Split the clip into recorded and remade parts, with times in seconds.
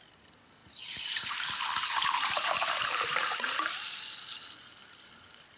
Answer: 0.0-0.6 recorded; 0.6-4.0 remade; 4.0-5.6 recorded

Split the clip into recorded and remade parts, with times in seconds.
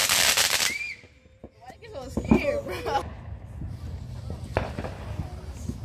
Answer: 0.0-0.6 remade; 0.6-5.8 recorded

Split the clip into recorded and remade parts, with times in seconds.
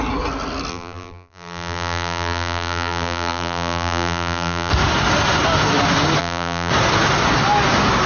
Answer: 0.0-0.7 recorded; 0.7-4.7 remade; 4.7-6.2 recorded; 6.2-6.7 remade; 6.7-8.1 recorded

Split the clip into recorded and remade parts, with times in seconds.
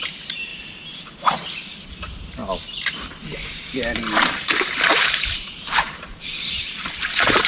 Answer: 0.0-0.5 remade; 0.5-1.9 recorded; 1.9-2.4 remade; 2.4-4.0 recorded; 4.0-7.5 remade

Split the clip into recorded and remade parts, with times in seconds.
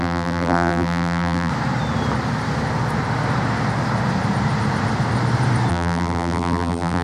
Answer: 0.0-1.5 remade; 1.5-5.7 recorded; 5.7-7.0 remade